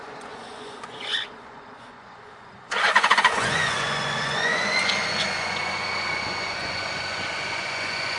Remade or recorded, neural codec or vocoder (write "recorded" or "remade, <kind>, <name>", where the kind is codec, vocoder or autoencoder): remade, vocoder, Vocos